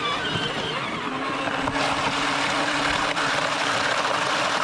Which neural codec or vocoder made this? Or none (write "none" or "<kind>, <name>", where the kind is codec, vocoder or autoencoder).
none